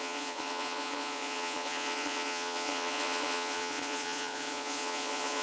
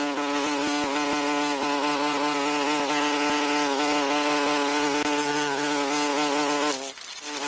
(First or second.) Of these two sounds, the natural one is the second